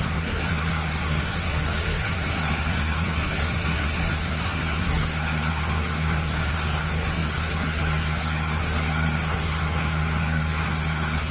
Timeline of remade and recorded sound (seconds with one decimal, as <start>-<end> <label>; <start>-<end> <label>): 0.0-11.3 remade